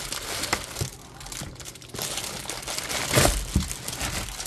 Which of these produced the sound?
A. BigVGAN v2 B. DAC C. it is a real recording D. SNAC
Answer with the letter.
C